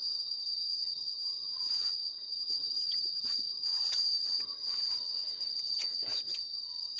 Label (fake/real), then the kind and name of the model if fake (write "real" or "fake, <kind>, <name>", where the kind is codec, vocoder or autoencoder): fake, vocoder, HiFi-GAN